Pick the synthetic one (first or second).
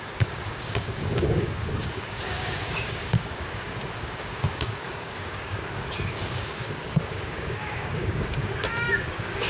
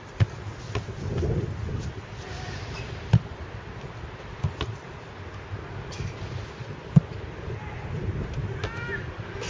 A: first